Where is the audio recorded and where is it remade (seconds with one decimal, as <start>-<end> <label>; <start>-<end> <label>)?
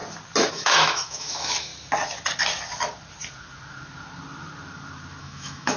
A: 0.0-0.5 recorded; 0.5-1.7 remade; 1.7-5.2 recorded; 5.2-5.8 remade